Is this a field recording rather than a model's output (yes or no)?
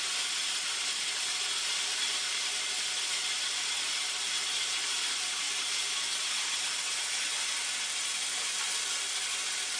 yes